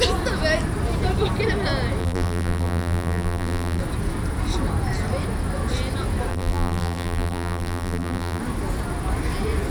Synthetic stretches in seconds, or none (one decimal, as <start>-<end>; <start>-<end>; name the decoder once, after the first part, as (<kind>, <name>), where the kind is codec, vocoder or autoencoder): 2.0-3.8 (vocoder, BigVGAN v2); 6.3-8.4